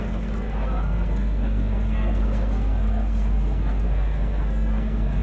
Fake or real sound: fake